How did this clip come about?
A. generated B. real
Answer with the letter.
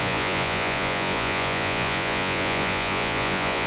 A